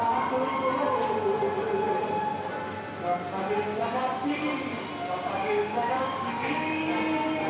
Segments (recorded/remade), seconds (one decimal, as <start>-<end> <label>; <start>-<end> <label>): 0.0-5.4 recorded; 5.4-6.9 remade; 6.9-7.5 recorded